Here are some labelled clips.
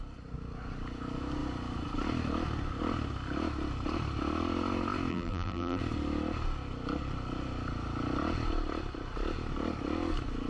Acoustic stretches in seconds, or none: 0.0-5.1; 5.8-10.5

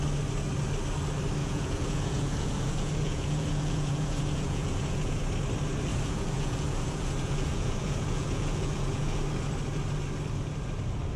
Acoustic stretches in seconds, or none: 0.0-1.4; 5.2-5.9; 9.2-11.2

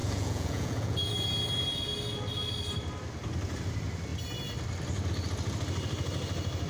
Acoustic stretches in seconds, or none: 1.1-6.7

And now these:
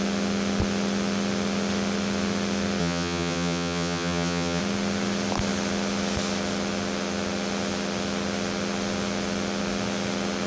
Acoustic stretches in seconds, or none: 0.0-2.8; 4.6-10.5

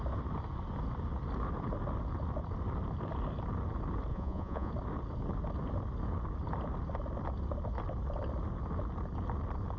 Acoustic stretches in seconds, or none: 0.0-4.1; 4.7-9.8

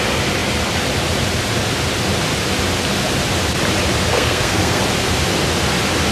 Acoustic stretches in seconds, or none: 0.0-4.1; 4.8-6.1

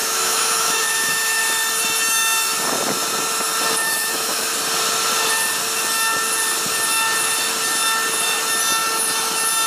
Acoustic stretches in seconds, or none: 1.4-3.8; 4.5-9.7